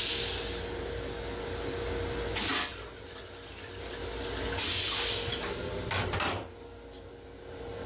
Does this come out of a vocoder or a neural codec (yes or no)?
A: no